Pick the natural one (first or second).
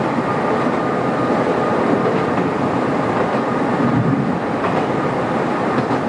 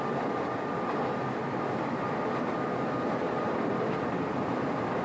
second